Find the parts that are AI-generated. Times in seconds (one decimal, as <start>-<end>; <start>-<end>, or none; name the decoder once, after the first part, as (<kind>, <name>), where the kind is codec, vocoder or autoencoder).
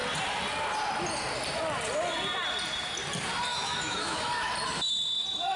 3.5-4.5 (autoencoder, DAC-VAE)